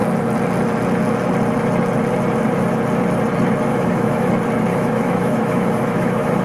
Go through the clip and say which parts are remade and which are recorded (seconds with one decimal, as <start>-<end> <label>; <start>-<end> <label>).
0.0-3.7 recorded; 3.7-4.3 remade; 4.3-4.7 recorded; 4.7-6.4 remade